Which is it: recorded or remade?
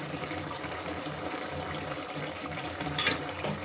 remade